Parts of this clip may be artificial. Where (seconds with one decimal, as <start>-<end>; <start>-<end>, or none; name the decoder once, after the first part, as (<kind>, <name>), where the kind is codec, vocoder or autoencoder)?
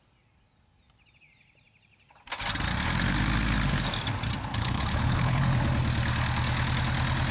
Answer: 4.5-5.4 (codec, HILCodec)